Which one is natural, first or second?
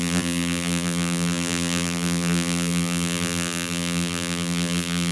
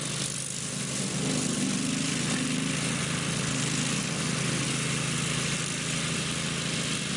second